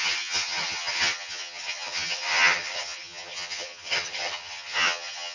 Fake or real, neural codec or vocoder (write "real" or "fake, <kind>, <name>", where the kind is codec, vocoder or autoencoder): fake, vocoder, HiFi-GAN